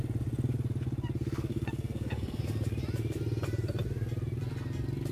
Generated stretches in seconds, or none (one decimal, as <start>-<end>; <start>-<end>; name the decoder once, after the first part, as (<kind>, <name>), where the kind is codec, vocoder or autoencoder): 1.5-2.4 (codec, SNAC)